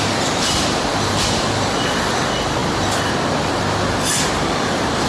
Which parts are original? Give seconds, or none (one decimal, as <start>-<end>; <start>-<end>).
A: 0.0-4.1